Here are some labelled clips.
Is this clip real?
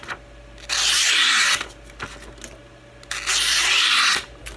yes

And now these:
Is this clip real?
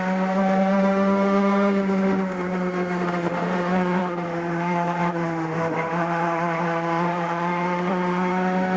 no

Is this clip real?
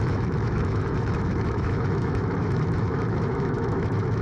no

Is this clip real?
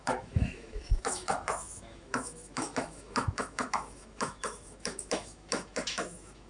no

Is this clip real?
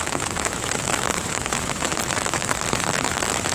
no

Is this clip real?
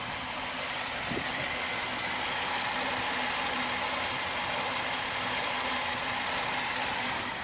yes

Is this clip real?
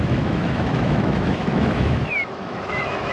no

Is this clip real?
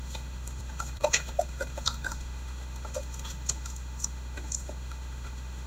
no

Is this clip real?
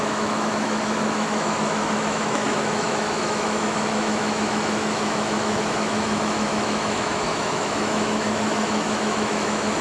no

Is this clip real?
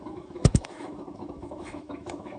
no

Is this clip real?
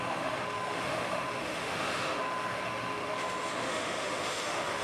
no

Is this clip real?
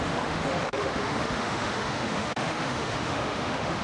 no